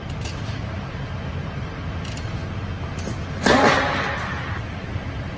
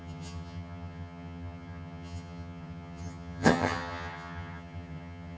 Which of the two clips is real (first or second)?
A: first